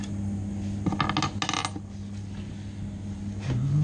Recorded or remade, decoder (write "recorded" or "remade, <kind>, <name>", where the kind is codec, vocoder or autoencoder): recorded